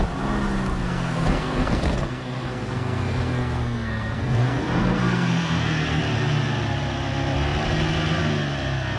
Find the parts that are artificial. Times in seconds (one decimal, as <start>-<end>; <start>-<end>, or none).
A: 0.7-6.0